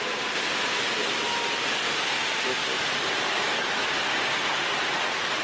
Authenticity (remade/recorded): recorded